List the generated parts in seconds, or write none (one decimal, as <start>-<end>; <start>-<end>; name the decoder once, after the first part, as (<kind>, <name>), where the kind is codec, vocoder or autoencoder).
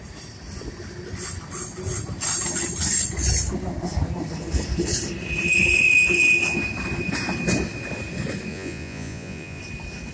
8.5-9.6 (vocoder, Vocos)